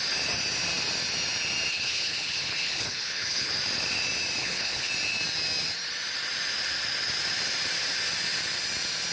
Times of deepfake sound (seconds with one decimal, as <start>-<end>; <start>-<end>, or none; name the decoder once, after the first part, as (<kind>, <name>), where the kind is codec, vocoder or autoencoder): 1.7-3.5 (codec, HILCodec); 4.4-4.9